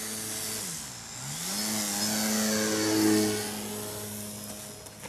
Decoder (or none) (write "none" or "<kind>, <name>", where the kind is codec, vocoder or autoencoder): none